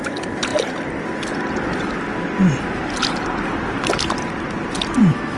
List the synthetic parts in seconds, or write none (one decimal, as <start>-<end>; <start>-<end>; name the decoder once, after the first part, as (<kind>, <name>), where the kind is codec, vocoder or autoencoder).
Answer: none